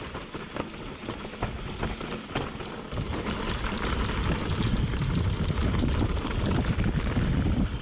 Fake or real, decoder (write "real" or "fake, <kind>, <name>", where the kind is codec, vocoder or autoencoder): real